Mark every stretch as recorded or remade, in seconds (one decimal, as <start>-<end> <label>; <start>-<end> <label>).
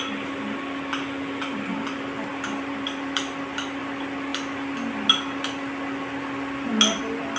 0.0-2.3 recorded; 2.3-3.8 remade; 3.8-7.4 recorded